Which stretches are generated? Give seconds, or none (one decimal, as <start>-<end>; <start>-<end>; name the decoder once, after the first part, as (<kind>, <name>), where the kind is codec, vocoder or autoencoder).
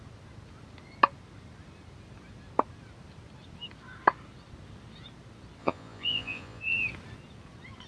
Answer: 5.6-6.6 (vocoder, Vocos)